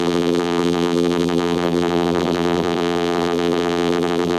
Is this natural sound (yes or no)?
no